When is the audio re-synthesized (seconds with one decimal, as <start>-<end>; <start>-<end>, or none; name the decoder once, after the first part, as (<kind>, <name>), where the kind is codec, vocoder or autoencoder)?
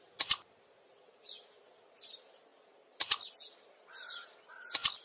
none